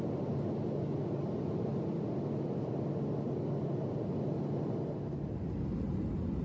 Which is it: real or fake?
real